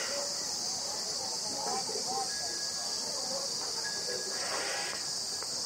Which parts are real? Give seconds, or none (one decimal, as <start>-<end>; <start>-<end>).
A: 0.0-5.7